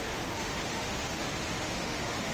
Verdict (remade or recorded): remade